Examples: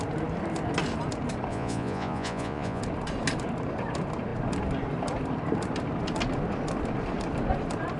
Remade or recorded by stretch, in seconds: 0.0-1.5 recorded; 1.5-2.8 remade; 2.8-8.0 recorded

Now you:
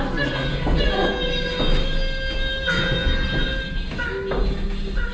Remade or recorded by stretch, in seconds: 0.0-5.1 recorded

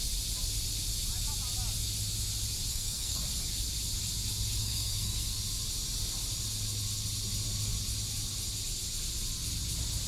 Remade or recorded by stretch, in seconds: 0.0-2.7 recorded; 2.7-3.2 remade; 3.2-4.6 recorded; 4.6-5.4 remade; 5.4-10.1 recorded

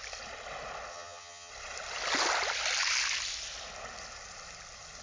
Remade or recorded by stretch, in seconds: 0.0-0.9 recorded; 0.9-1.5 remade; 1.5-5.0 recorded

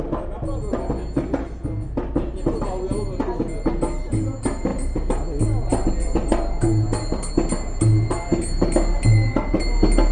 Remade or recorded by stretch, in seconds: 0.0-10.1 recorded

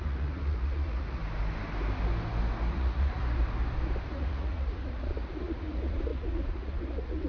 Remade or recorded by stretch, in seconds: 0.0-1.2 remade; 1.2-2.7 recorded; 2.7-3.2 remade; 3.2-4.1 recorded; 4.1-7.3 remade

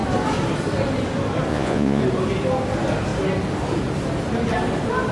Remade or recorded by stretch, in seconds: 0.0-1.5 recorded; 1.5-2.0 remade; 2.0-5.1 recorded